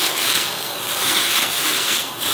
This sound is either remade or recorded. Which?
remade